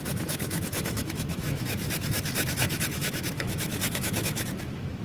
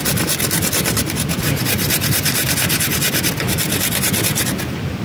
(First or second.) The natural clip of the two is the second